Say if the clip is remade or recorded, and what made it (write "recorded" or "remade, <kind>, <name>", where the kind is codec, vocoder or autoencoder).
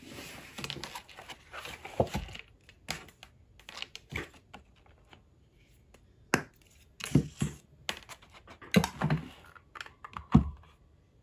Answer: recorded